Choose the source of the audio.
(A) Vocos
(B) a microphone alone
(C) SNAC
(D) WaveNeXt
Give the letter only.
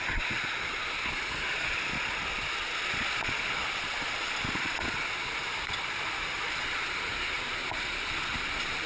A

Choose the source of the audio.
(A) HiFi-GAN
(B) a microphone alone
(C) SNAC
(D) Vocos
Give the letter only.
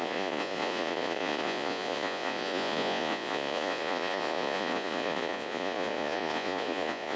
D